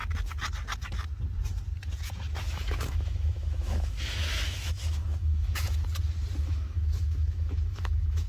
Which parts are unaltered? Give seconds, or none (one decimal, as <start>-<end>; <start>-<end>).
0.0-2.4; 5.8-6.4